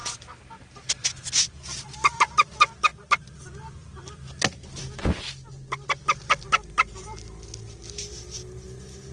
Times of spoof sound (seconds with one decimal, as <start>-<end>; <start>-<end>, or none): none